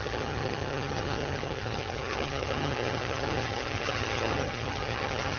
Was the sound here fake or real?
fake